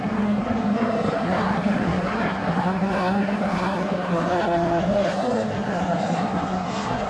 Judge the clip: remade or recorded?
remade